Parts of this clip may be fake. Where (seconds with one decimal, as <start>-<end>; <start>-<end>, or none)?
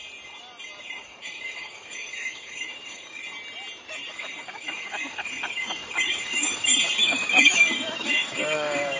0.8-3.2; 4.1-9.0